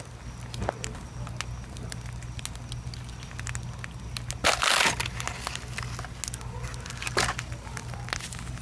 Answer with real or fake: real